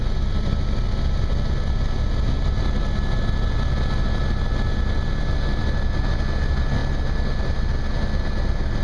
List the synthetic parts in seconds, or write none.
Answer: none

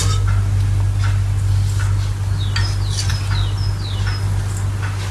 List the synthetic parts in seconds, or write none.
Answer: none